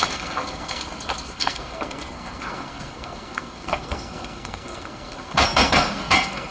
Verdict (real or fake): fake